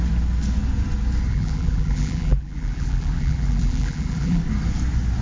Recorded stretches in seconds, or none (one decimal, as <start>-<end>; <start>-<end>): 0.0-1.3; 4.4-5.2